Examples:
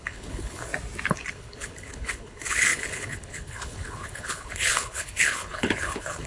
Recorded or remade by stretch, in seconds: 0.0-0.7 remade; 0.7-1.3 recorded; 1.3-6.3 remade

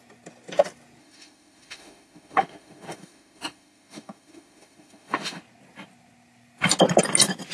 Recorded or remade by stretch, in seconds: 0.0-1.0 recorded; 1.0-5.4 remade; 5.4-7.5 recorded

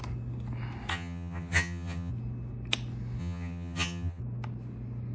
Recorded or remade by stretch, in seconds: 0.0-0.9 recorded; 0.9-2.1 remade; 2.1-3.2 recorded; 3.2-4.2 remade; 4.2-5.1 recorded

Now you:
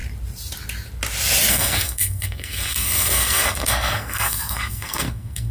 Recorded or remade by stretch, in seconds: 0.0-1.5 recorded; 1.5-5.5 remade

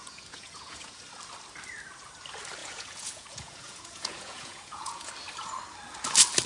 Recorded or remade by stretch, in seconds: 0.0-1.0 remade; 1.0-2.6 recorded; 2.6-5.1 remade; 5.1-6.5 recorded

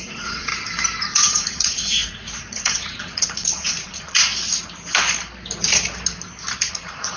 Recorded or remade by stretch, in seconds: 0.0-0.5 remade; 0.5-1.0 recorded; 1.0-4.3 remade; 4.3-6.7 recorded; 6.7-7.2 remade